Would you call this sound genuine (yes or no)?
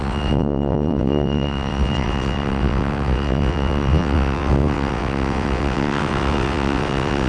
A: no